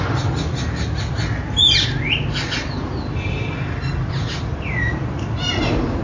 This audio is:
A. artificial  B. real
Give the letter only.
B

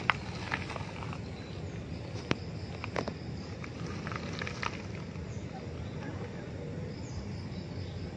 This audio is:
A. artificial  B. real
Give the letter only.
B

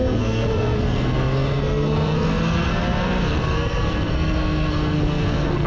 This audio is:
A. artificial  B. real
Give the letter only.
A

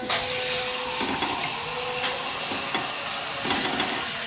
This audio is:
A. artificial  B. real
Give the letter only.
B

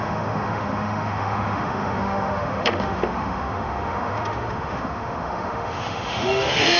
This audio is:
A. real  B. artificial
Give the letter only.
B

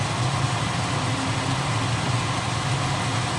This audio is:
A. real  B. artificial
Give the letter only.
A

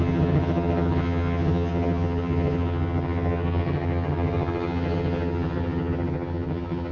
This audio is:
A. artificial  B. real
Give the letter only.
A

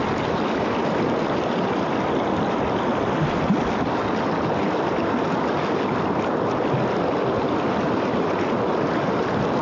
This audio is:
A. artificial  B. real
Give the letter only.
B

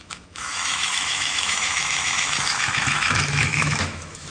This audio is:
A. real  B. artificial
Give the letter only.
B